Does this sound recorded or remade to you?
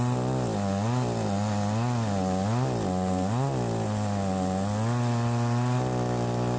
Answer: recorded